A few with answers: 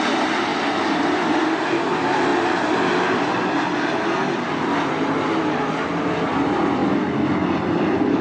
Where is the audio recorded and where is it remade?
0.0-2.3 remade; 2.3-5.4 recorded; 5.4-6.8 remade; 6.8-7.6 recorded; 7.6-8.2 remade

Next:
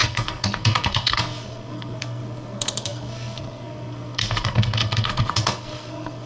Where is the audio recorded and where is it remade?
0.0-6.3 remade

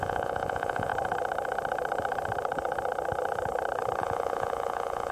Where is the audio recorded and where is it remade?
0.0-0.9 remade; 0.9-4.0 recorded; 4.0-5.1 remade

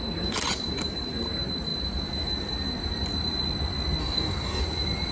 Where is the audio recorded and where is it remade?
0.0-4.0 recorded; 4.0-4.6 remade; 4.6-5.1 recorded